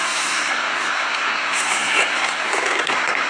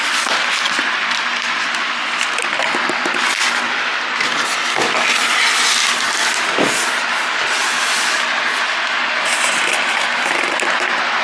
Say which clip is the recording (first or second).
second